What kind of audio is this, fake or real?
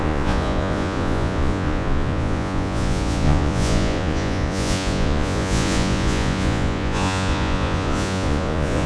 fake